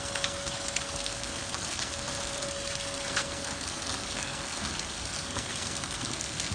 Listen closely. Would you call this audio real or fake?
fake